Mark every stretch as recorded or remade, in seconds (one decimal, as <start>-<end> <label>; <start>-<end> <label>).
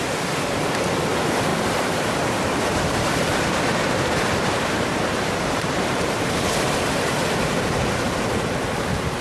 0.0-1.5 recorded; 1.5-6.5 remade; 6.5-9.2 recorded